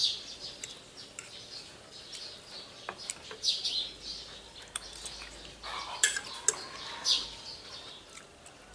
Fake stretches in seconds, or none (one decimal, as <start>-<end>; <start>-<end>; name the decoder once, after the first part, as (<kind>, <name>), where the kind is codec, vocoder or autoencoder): none

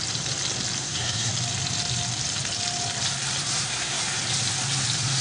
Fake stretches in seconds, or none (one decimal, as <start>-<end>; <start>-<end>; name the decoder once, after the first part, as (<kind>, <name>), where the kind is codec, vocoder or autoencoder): 0.8-1.3 (codec, SNAC); 3.4-4.0